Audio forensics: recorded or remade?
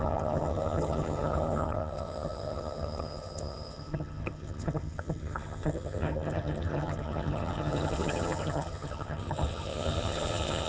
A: remade